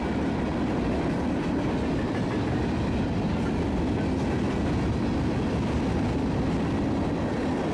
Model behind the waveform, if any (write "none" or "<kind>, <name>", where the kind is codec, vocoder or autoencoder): none